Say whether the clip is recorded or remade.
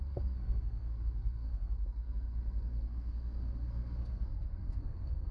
remade